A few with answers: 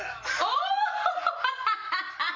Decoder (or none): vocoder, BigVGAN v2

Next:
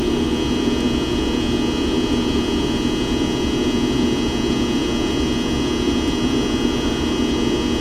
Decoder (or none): none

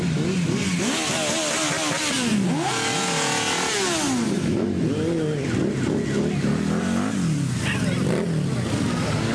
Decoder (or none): none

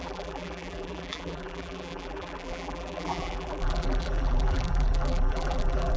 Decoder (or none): vocoder, BigVGAN v2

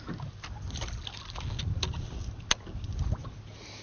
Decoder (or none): none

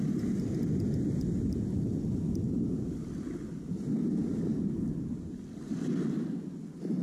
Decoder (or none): none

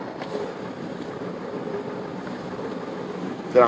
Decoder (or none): vocoder, BigVGAN v2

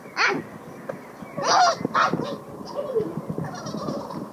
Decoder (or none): none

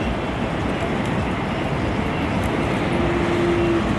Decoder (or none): none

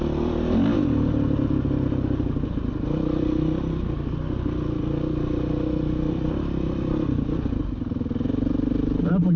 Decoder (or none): none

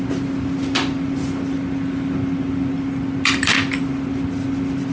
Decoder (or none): none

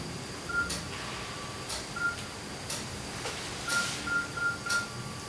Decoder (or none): none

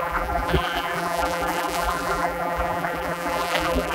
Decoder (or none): vocoder, BigVGAN v2